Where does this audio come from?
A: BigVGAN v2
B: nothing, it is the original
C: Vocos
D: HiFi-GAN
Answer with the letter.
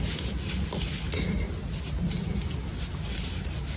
B